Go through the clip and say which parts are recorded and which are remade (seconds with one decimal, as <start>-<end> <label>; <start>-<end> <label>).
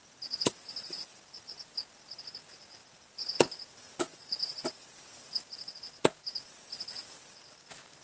0.0-8.0 recorded